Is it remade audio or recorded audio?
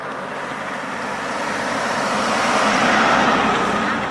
recorded